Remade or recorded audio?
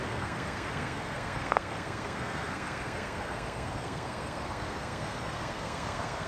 remade